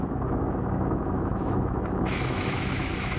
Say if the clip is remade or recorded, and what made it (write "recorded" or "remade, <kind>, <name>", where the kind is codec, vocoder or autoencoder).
remade, autoencoder, DAC-VAE